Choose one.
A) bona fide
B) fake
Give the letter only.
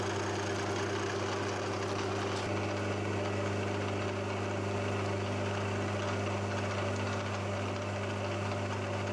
A